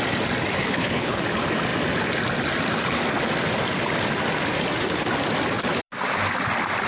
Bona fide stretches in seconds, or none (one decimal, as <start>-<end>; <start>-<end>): 0.0-0.6; 1.2-6.9

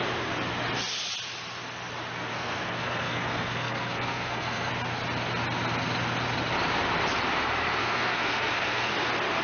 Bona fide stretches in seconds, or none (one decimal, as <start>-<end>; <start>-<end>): 0.0-2.3; 4.7-7.8; 8.9-9.4